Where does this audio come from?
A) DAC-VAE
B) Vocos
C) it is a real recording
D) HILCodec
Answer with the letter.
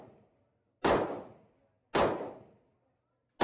C